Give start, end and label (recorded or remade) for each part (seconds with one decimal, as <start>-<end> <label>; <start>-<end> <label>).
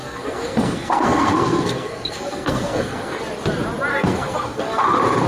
0.0-3.2 remade; 3.2-3.9 recorded; 3.9-4.8 remade; 4.8-5.3 recorded